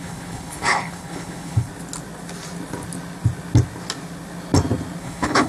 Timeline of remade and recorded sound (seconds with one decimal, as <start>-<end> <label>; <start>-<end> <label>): 0.0-1.7 remade; 1.7-5.0 recorded; 5.0-5.5 remade